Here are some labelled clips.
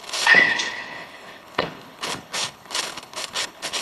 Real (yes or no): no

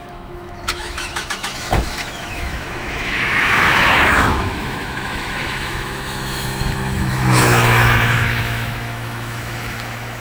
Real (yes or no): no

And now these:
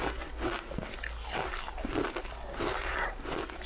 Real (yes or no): yes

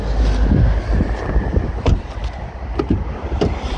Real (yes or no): yes